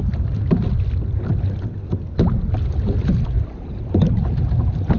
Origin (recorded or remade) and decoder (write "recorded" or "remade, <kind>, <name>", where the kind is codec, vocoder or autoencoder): recorded